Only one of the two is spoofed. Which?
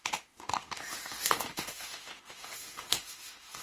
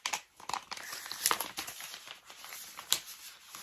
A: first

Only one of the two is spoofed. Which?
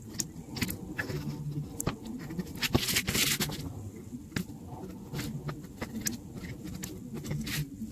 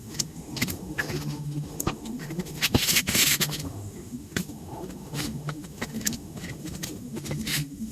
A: second